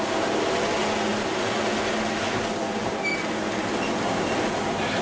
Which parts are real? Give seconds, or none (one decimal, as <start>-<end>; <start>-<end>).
0.0-1.1; 1.6-5.0